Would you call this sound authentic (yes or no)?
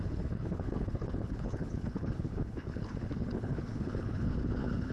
no